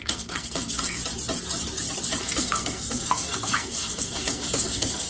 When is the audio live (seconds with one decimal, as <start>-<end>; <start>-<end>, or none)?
1.0-2.2